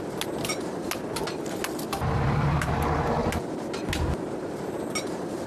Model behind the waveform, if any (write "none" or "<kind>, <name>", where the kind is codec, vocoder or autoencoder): none